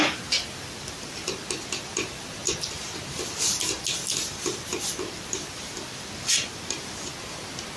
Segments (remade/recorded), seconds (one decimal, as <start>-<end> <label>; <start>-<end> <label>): 0.0-2.4 recorded; 2.4-3.6 remade; 3.6-4.7 recorded; 4.7-6.0 remade; 6.0-7.8 recorded